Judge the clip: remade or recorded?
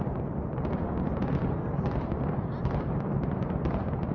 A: recorded